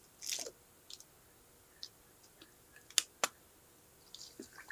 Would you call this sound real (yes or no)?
yes